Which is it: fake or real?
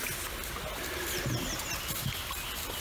real